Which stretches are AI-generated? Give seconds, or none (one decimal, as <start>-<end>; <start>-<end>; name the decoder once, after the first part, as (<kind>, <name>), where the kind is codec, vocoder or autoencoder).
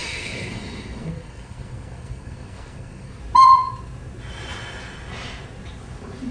0.0-3.2 (codec, SNAC)